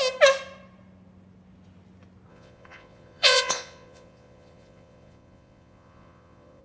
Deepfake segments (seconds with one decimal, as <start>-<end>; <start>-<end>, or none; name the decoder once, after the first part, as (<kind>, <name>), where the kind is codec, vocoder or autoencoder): 2.3-6.6 (vocoder, Vocos)